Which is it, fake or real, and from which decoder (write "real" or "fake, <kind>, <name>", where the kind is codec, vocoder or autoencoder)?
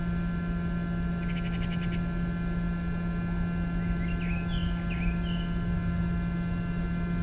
real